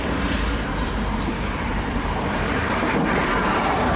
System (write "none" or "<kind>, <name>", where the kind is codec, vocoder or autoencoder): vocoder, BigVGAN v2